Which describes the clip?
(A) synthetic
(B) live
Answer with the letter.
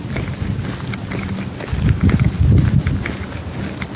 B